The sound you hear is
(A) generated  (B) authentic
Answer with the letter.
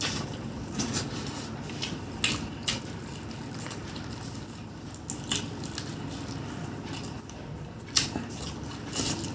B